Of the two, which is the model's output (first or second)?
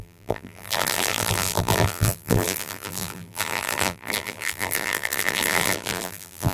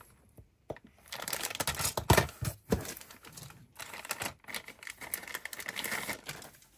first